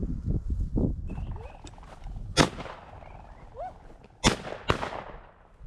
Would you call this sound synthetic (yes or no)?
no